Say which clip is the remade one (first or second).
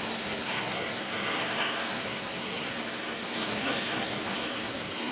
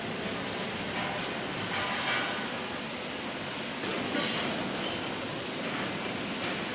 first